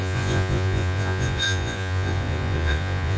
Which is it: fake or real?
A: fake